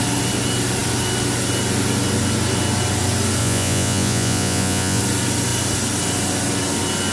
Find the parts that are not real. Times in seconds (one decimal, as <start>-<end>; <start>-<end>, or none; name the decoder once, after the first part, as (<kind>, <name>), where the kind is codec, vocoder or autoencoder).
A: 3.4-5.0 (vocoder, Vocos)